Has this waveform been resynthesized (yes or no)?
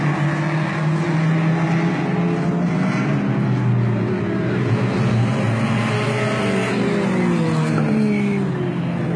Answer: no